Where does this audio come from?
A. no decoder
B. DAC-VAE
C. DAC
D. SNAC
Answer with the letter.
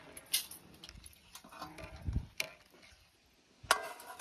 A